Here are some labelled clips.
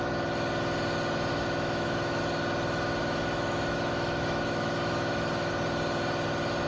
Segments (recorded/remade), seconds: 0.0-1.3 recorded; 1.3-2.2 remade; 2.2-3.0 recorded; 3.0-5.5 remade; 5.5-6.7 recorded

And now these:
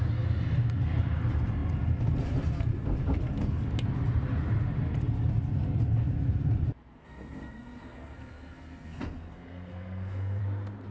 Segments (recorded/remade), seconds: 0.0-7.0 recorded; 7.0-10.4 remade; 10.4-10.9 recorded

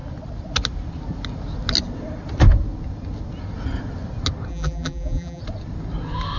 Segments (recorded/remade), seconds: 0.0-4.5 recorded; 4.5-5.4 remade; 5.4-6.4 recorded

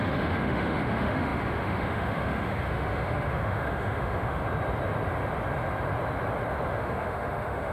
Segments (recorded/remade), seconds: 0.0-4.4 remade; 4.4-6.7 recorded; 6.7-7.7 remade

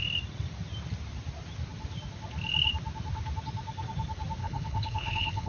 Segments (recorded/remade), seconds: 0.0-4.4 recorded; 4.4-5.5 remade

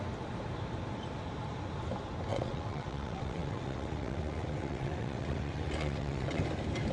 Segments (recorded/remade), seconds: 0.0-2.3 recorded; 2.3-6.4 remade; 6.4-6.9 recorded